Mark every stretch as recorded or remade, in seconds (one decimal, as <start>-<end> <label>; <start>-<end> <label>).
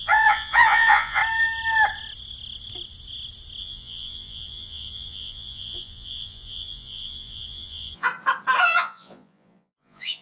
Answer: 0.0-1.2 remade; 1.2-3.6 recorded; 3.6-8.1 remade; 8.1-8.6 recorded; 8.6-10.2 remade